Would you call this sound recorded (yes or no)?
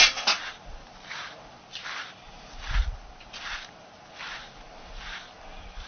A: yes